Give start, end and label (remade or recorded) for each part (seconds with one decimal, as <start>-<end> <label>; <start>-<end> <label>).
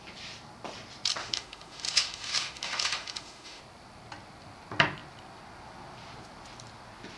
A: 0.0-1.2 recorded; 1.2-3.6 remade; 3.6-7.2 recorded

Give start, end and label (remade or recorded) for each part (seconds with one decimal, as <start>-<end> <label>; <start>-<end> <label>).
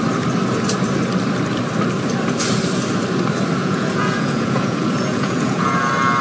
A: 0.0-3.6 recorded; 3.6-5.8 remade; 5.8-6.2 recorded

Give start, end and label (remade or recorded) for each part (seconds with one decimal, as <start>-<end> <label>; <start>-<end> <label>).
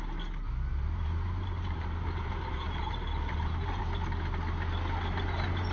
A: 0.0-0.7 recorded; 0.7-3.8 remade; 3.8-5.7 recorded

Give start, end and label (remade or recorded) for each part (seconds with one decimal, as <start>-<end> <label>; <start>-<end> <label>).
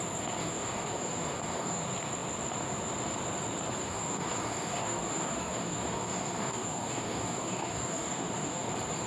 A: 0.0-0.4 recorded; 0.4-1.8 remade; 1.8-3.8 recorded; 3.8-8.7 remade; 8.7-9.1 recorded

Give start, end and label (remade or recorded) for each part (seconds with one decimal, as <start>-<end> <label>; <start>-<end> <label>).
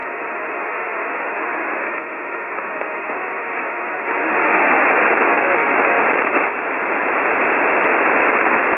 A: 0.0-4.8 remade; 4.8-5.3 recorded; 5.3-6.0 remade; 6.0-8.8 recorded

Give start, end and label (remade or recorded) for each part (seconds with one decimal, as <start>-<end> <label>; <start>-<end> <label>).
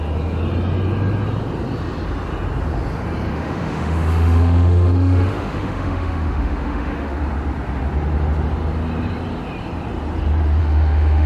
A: 0.0-3.3 recorded; 3.3-7.2 remade; 7.2-10.6 recorded; 10.6-11.3 remade